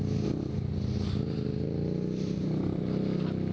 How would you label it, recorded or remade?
recorded